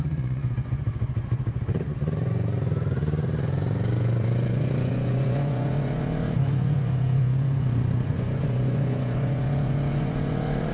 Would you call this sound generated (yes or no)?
yes